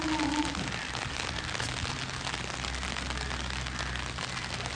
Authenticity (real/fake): real